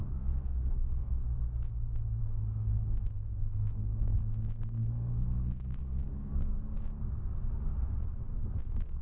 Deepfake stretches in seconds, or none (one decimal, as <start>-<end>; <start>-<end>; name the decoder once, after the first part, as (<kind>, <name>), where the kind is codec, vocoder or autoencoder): 0.0-1.2 (codec, SNAC); 2.2-6.5; 8.6-9.0